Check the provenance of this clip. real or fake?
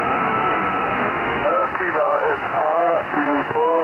fake